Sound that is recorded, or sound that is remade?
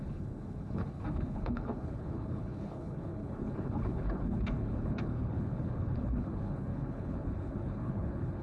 remade